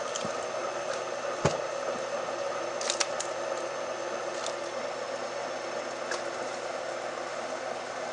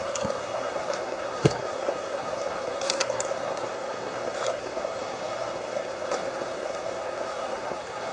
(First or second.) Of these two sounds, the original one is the first